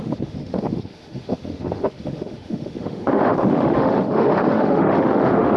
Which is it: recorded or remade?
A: remade